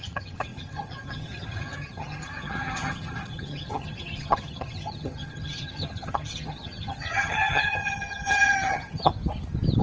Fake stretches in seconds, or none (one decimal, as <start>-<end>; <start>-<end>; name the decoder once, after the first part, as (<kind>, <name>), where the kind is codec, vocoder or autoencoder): 0.0-9.1 (vocoder, HiFi-GAN)